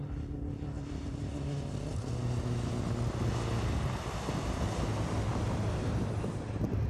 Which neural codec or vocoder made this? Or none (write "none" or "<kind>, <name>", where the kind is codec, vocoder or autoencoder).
none